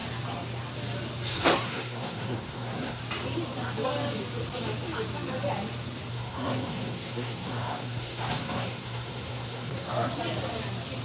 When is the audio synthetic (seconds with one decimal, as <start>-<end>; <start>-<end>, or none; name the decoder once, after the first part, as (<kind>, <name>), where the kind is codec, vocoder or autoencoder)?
1.3-3.0 (codec, SNAC); 6.1-10.1